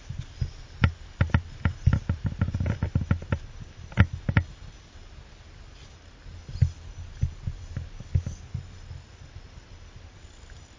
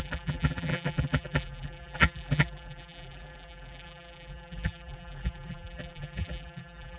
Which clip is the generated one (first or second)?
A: second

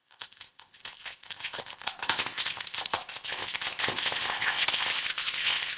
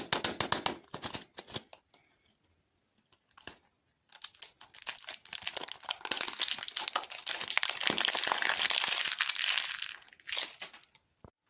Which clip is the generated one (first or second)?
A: first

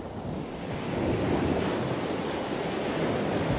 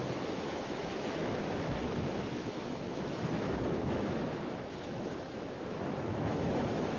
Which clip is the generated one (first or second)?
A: second